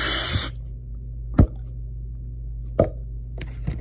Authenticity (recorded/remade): recorded